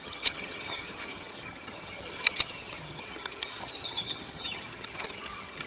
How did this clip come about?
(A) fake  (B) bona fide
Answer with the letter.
A